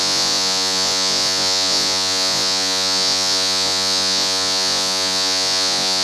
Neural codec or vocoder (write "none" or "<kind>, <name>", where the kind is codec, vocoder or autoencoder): vocoder, Vocos